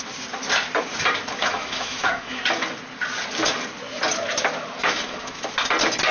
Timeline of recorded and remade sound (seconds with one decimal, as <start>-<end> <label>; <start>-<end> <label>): 0.0-1.4 recorded; 1.4-2.4 remade; 2.4-4.8 recorded; 4.8-5.4 remade; 5.4-6.1 recorded